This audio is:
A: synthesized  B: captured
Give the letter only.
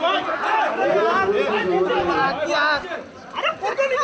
B